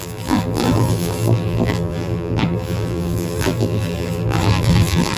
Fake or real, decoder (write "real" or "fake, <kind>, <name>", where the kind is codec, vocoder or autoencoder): fake, vocoder, BigVGAN v2